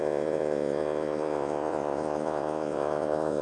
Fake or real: fake